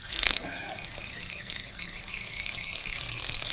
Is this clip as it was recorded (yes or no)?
no